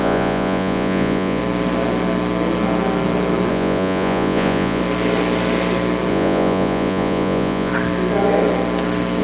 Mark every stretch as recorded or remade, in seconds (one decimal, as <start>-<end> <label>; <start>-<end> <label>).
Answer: 0.0-1.4 remade; 1.4-3.5 recorded; 3.5-4.8 remade; 4.8-6.1 recorded; 6.1-7.7 remade; 7.7-9.2 recorded